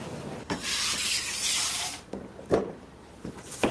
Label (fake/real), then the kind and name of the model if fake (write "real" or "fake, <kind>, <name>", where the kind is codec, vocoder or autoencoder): fake, vocoder, BigVGAN v2